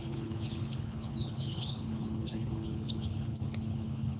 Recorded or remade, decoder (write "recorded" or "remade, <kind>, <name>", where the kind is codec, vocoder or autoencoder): remade, codec, HILCodec